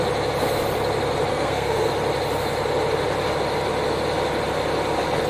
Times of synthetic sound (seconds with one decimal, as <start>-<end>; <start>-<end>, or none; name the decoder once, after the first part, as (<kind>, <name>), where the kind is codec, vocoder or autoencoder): 1.3-1.9 (codec, SNAC)